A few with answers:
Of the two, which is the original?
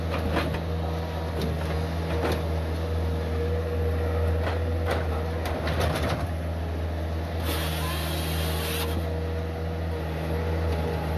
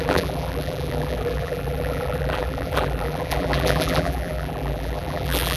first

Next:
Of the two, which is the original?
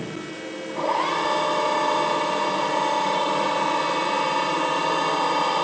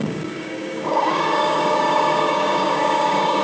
first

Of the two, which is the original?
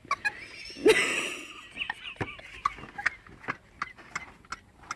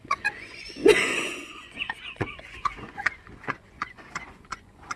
first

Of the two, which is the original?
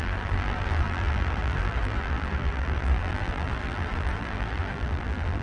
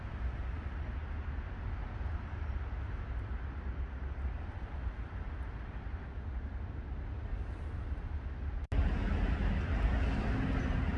second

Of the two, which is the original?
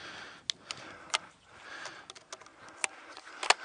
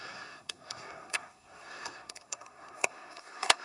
first